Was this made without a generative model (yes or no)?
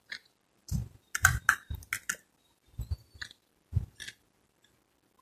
yes